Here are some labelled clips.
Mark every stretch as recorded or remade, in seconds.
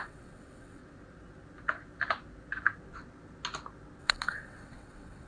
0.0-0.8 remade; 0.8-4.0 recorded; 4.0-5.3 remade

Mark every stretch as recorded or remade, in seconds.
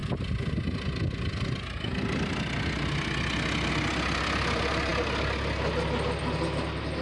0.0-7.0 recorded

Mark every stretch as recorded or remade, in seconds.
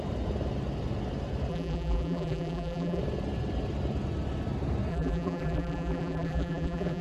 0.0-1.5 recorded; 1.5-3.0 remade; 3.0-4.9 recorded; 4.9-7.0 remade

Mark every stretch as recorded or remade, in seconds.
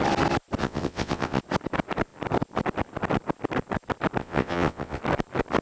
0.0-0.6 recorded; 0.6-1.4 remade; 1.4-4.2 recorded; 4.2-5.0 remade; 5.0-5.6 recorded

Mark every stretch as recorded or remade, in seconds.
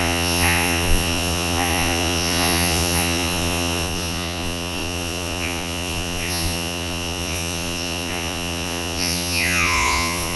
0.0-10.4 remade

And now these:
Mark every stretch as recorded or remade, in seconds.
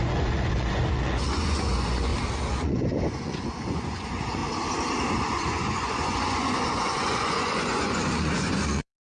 0.0-2.1 remade; 2.1-2.6 recorded; 2.6-4.4 remade; 4.4-5.1 recorded; 5.1-9.0 remade